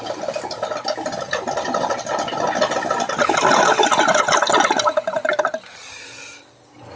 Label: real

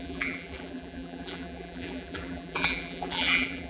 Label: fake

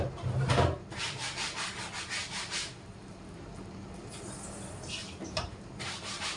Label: fake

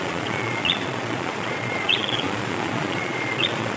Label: fake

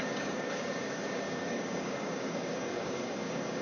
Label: fake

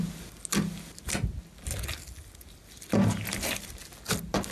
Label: real